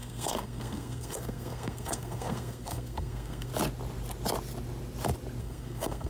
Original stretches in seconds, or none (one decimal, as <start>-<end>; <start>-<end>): 3.5-5.4

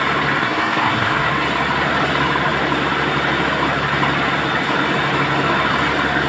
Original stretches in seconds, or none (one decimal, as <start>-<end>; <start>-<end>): 0.0-0.4; 1.3-6.3

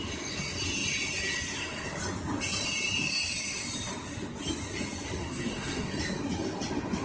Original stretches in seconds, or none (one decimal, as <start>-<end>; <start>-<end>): 0.0-5.2; 5.9-7.0

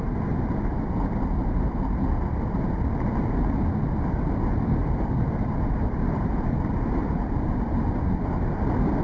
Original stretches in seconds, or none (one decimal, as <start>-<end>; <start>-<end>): 0.0-4.8; 6.3-7.0; 7.6-9.0